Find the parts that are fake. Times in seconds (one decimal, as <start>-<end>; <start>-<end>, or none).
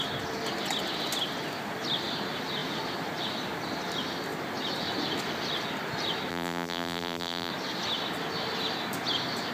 6.3-7.5